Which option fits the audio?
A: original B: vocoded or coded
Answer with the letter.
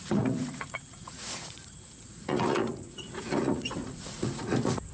B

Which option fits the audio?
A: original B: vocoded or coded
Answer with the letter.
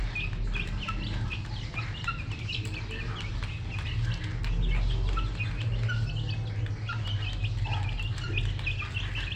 A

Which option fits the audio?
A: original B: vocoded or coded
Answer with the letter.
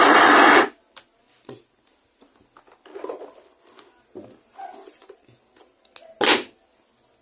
A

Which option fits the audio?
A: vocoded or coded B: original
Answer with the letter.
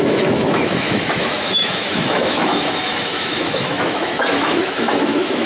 A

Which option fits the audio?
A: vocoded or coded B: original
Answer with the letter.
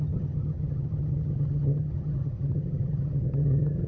A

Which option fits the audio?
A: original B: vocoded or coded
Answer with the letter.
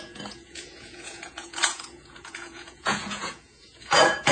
B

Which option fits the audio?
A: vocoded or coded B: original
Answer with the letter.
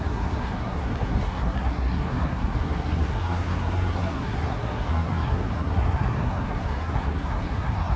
A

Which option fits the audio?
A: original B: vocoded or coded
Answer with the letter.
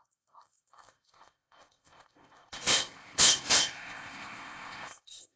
B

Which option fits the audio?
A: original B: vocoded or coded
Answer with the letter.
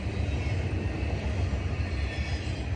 A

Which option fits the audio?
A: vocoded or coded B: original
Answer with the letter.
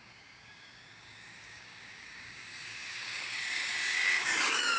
A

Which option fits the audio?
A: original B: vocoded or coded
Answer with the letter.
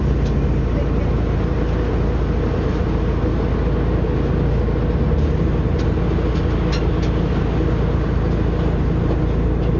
A